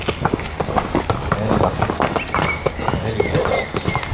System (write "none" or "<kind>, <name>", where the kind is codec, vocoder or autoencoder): none